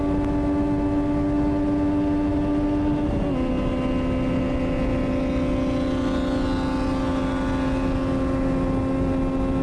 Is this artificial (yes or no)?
no